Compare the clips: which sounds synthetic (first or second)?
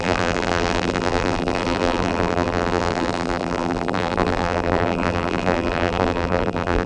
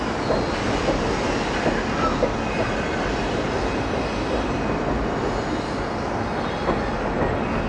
first